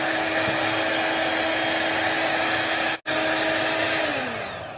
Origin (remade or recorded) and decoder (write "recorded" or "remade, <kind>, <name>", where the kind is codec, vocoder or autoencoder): recorded